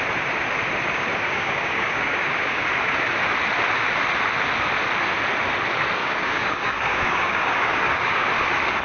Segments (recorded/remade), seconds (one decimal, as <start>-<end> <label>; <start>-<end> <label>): 0.0-1.1 recorded; 1.1-2.6 remade; 2.6-6.0 recorded; 6.0-8.3 remade; 8.3-8.8 recorded